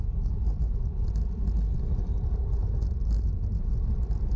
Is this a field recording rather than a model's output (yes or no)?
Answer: yes